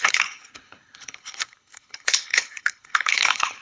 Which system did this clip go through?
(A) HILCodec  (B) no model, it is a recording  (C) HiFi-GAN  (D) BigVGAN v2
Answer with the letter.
A